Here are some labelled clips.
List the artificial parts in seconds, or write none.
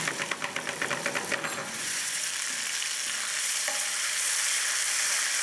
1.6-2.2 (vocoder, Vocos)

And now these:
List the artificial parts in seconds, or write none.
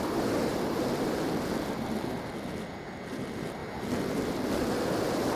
0.0-3.6 (vocoder, BigVGAN v2); 4.1-5.4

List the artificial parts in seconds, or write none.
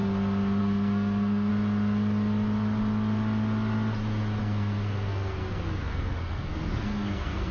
0.6-1.5 (codec, SNAC); 4.4-7.5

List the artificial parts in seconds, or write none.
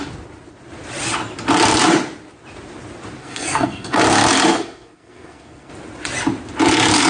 3.2-4.0 (codec, SNAC); 4.5-5.7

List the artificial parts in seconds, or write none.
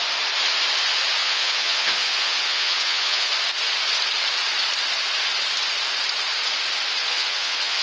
1.2-3.3 (vocoder, Vocos); 7.0-7.8